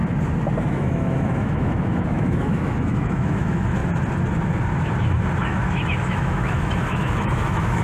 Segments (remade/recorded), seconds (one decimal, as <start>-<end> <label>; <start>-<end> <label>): 0.0-0.6 recorded; 0.6-3.8 remade; 3.8-5.4 recorded; 5.4-7.8 remade